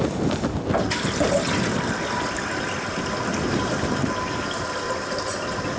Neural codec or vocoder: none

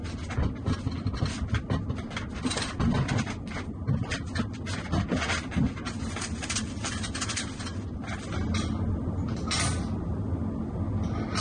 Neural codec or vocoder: none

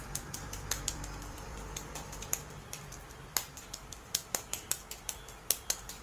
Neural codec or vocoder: vocoder, BigVGAN v2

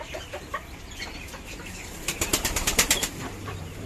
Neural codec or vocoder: vocoder, BigVGAN v2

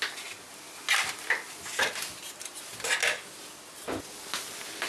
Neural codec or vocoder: none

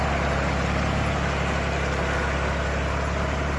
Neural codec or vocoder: none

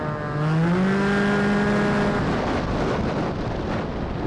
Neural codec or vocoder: none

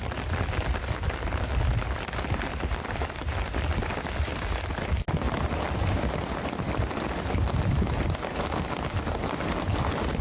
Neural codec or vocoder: none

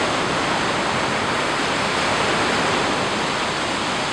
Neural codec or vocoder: none